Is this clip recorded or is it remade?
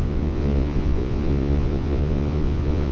remade